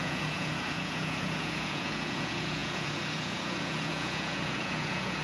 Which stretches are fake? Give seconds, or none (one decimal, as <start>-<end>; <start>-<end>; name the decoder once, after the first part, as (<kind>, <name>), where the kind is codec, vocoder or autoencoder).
0.0-5.2 (vocoder, Vocos)